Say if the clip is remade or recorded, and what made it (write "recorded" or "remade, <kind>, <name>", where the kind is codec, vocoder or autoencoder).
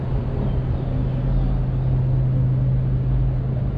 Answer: recorded